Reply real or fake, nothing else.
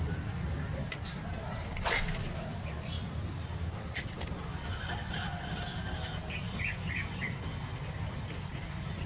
real